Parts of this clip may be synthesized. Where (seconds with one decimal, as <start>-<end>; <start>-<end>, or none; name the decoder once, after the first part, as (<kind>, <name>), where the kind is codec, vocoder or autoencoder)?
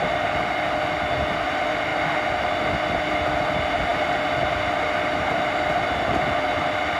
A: none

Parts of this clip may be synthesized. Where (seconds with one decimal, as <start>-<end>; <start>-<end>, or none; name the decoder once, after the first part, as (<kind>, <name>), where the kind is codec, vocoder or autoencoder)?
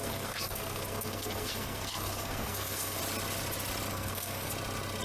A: 0.0-3.0 (codec, SNAC); 3.9-4.5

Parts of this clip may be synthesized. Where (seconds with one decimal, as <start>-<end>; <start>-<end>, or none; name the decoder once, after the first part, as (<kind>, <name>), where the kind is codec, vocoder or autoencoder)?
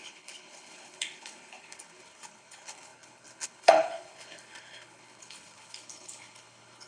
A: 0.0-6.9 (codec, HILCodec)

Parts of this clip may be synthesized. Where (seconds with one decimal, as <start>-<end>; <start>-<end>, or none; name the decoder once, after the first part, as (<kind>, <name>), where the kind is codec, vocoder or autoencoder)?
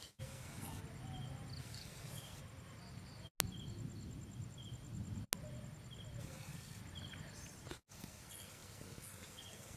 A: 0.0-0.8 (codec, SNAC); 1.6-2.4; 6.2-6.8; 7.7-9.8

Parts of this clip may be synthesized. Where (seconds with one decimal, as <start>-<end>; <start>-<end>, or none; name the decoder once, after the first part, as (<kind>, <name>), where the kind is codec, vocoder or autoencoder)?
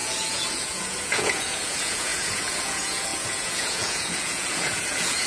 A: 0.0-5.3 (vocoder, Vocos)